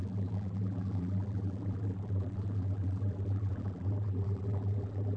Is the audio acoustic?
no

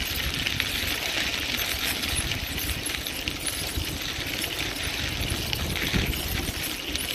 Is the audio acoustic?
yes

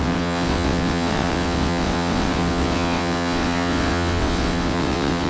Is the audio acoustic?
no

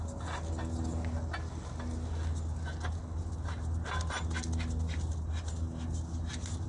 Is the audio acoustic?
yes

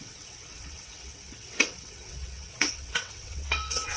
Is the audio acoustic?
no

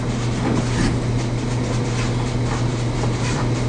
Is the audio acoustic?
yes